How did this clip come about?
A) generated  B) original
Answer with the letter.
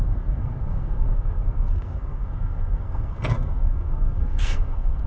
A